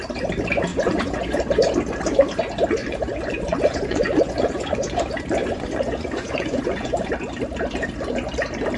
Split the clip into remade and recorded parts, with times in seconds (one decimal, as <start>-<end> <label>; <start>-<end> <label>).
0.0-0.7 recorded; 0.7-1.5 remade; 1.5-2.8 recorded; 2.8-5.0 remade; 5.0-5.4 recorded; 5.4-7.1 remade; 7.1-8.8 recorded